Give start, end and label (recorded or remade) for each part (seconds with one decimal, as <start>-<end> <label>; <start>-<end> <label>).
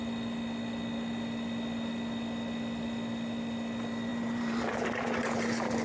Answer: 0.0-4.1 recorded; 4.1-5.2 remade; 5.2-5.8 recorded